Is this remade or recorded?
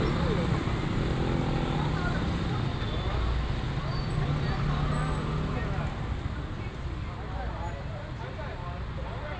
recorded